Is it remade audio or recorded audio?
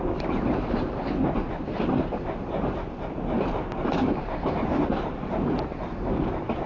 recorded